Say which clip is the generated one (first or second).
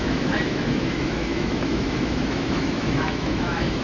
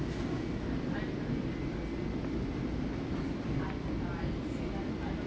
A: first